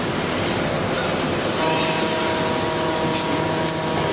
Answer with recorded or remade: recorded